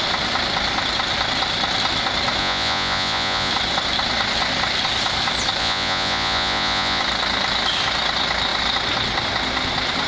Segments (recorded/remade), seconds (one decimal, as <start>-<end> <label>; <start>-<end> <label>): 0.0-2.4 recorded; 2.4-3.5 remade; 3.5-5.6 recorded; 5.6-7.0 remade; 7.0-10.1 recorded